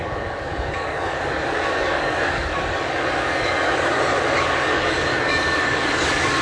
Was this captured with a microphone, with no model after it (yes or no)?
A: no